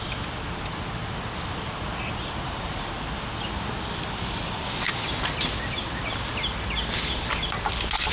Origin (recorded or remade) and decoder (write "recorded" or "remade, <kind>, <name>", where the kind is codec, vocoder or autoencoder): recorded